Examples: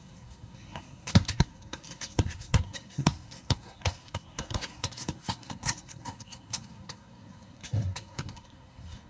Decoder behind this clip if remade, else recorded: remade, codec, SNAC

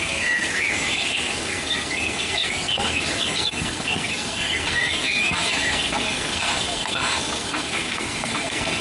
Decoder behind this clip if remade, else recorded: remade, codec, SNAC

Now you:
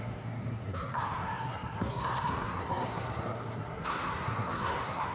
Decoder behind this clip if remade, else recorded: remade, codec, SNAC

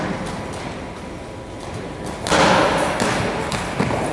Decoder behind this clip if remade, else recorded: recorded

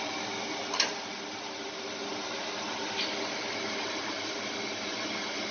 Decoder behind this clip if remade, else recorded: recorded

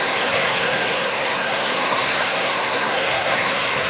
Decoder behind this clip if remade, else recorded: remade, codec, SNAC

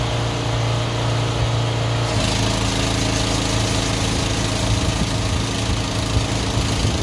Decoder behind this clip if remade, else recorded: recorded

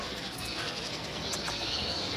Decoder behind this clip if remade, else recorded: remade, codec, SNAC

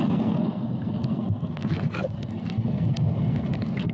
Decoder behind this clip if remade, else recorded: remade, codec, SNAC